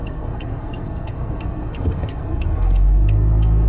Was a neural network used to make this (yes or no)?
yes